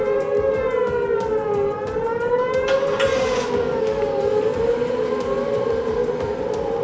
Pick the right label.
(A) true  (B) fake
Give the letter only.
A